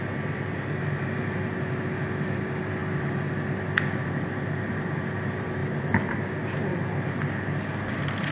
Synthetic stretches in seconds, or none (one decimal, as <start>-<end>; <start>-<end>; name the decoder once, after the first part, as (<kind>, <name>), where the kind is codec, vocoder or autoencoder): 2.8-4.4 (vocoder, BigVGAN v2)